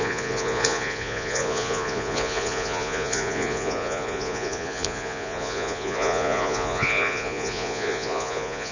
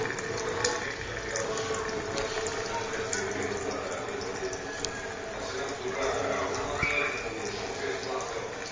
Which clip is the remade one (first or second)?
first